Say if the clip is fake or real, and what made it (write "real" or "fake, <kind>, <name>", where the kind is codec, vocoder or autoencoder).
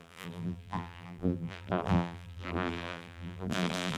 fake, vocoder, BigVGAN v2